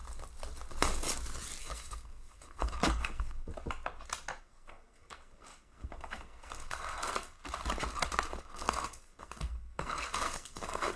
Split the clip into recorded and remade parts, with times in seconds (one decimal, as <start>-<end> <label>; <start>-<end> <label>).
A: 0.0-1.6 recorded; 1.6-3.5 remade; 3.5-4.4 recorded; 4.4-7.4 remade; 7.4-8.4 recorded; 8.4-11.0 remade